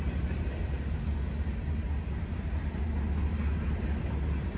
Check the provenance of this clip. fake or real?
real